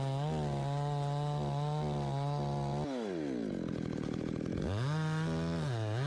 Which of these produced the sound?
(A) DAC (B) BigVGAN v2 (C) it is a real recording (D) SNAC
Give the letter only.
C